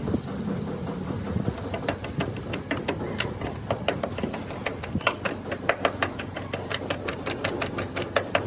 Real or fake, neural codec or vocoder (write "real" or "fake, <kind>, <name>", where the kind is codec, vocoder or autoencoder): real